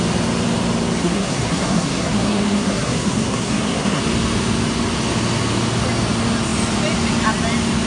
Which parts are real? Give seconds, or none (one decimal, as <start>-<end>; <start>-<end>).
0.0-1.0; 4.0-7.9